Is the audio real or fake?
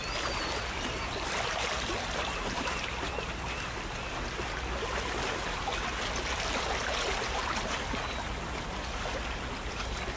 real